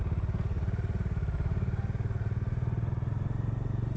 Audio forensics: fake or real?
fake